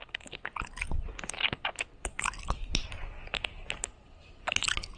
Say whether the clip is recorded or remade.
recorded